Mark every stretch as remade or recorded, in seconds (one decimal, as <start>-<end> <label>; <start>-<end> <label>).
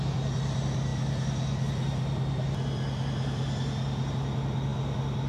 0.0-5.3 recorded